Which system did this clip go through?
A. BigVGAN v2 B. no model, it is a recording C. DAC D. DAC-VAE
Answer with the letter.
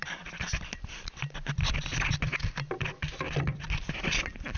A